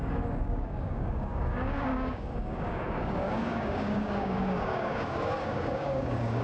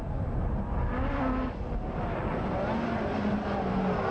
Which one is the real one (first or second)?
second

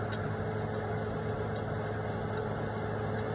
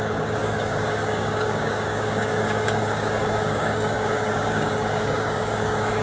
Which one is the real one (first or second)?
first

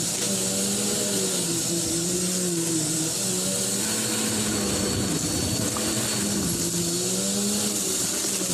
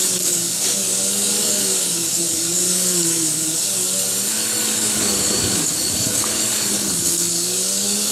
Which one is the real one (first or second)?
first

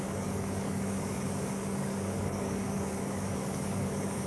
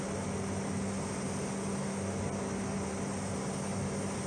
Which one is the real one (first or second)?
second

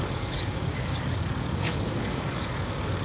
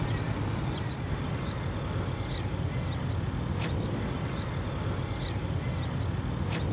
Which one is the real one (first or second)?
second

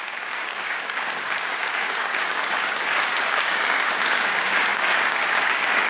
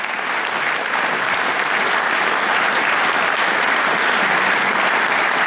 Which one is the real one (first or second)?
second